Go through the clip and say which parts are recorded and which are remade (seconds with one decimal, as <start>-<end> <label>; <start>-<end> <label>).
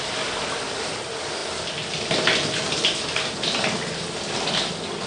0.0-5.1 recorded